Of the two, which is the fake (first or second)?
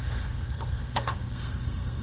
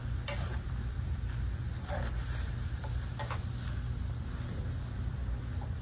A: first